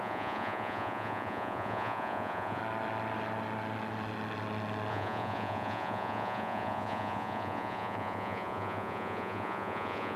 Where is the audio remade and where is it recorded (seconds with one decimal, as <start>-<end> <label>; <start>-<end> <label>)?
0.0-2.6 remade; 2.6-4.9 recorded; 4.9-10.2 remade